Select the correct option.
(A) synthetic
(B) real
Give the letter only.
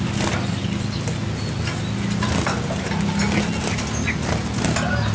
B